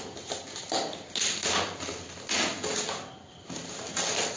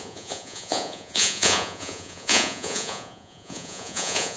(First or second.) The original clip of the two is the first